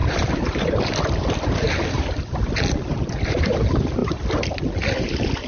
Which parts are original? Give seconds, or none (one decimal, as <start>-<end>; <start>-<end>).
0.0-5.5